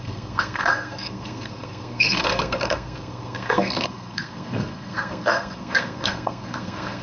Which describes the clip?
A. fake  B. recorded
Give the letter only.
A